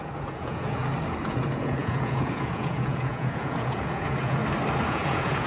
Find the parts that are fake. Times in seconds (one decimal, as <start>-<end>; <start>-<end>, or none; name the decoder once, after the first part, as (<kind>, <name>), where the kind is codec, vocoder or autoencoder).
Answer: 0.0-0.8 (vocoder, Vocos); 1.3-4.4; 4.9-5.5